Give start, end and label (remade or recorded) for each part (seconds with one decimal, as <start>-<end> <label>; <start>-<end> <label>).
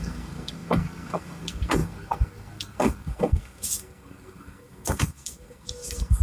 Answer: 0.0-6.2 remade